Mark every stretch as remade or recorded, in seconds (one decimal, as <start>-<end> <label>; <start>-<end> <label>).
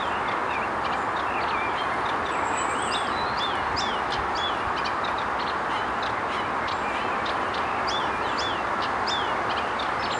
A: 0.0-10.2 recorded